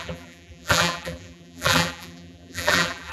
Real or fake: fake